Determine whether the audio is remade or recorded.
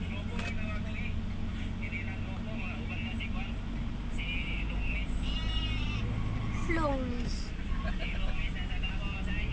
recorded